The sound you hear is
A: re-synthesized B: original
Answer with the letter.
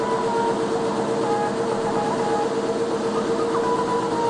B